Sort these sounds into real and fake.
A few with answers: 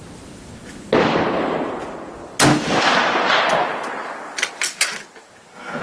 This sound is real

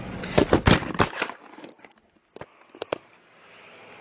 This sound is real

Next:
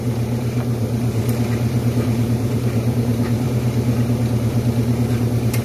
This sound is fake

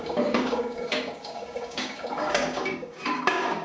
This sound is fake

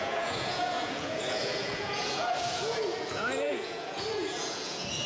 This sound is fake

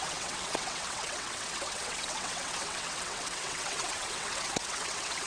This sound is fake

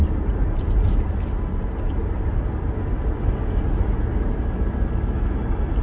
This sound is real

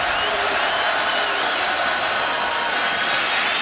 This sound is real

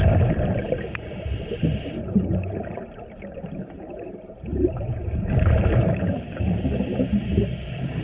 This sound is fake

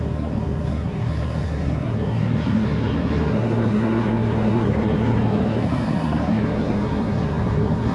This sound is fake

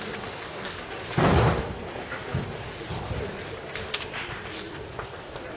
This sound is real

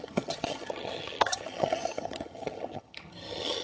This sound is fake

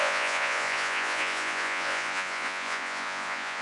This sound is fake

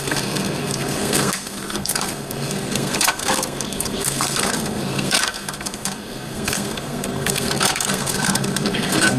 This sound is fake